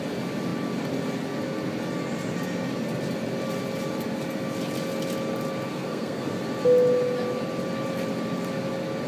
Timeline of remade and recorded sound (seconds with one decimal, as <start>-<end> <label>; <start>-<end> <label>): 0.0-5.7 recorded; 5.7-6.4 remade; 6.4-9.1 recorded